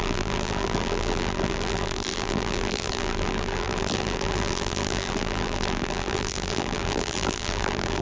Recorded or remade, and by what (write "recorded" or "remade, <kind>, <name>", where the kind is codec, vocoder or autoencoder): remade, vocoder, BigVGAN v2